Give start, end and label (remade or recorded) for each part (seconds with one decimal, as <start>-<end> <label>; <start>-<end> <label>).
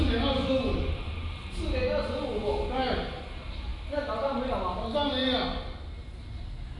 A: 0.0-6.8 recorded